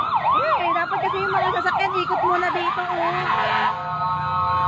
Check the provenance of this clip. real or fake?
real